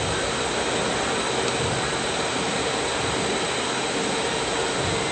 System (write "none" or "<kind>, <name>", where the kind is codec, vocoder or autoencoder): none